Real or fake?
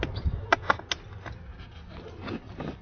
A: real